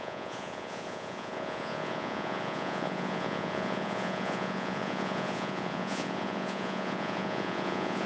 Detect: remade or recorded remade